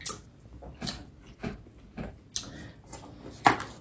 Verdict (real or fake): real